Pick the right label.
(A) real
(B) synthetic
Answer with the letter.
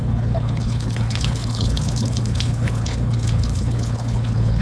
B